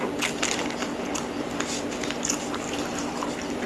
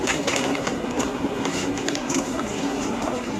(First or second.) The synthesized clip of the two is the second